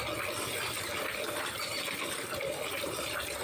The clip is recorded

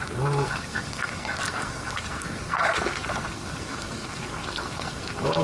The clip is remade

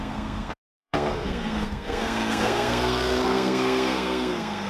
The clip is remade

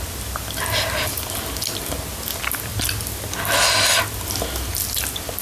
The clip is recorded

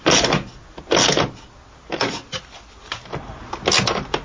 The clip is recorded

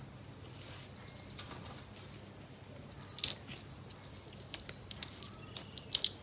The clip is recorded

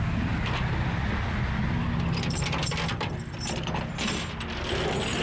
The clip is recorded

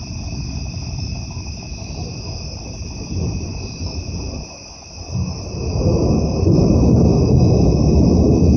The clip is recorded